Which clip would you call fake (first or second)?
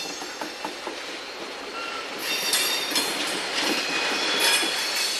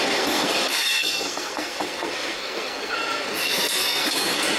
second